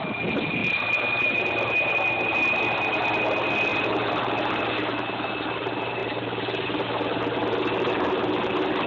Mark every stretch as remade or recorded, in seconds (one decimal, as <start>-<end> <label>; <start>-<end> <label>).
0.0-0.6 recorded; 0.6-1.4 remade; 1.4-3.7 recorded; 3.7-4.6 remade; 4.6-8.9 recorded